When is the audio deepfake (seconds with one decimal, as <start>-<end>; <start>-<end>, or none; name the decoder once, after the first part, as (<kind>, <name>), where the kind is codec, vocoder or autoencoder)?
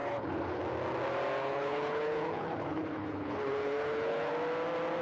0.0-0.6 (codec, HILCodec); 1.4-4.3